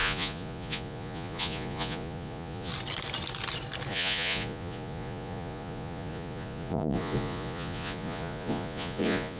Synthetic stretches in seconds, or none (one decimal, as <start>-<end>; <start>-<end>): 0.0-2.7; 3.9-9.4